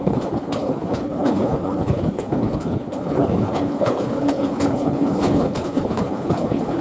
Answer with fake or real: fake